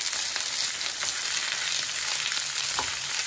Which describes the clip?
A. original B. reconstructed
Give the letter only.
A